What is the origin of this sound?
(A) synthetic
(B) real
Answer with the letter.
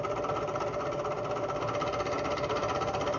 B